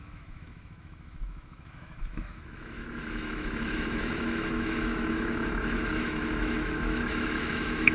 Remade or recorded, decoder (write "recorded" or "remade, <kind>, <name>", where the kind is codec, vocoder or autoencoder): remade, autoencoder, DAC-VAE